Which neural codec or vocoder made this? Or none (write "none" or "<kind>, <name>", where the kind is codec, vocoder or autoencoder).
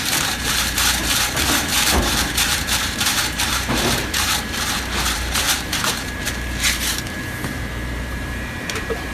vocoder, BigVGAN v2